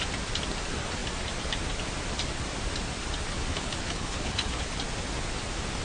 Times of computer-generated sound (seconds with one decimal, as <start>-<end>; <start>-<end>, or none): 3.5-4.8